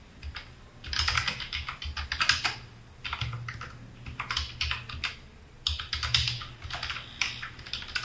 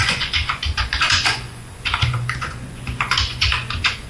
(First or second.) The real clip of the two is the first